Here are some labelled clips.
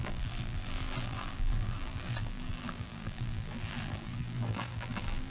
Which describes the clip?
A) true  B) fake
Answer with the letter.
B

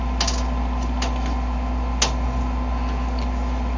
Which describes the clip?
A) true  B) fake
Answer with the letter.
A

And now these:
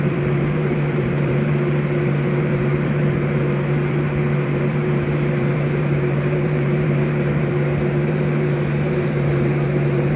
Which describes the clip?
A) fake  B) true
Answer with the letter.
A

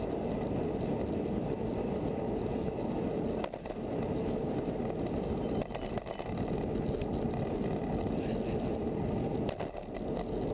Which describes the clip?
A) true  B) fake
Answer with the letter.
A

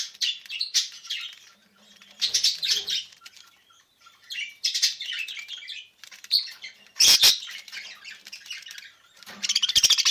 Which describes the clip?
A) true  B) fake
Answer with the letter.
B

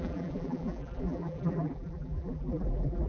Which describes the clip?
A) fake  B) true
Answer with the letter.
A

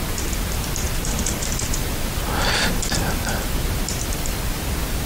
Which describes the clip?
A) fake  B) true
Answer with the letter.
A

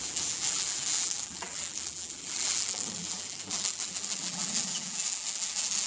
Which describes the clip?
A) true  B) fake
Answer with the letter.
B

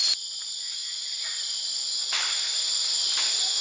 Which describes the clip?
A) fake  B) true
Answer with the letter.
B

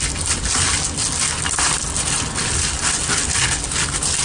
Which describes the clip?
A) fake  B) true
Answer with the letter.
B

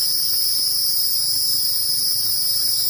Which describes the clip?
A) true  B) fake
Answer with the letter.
B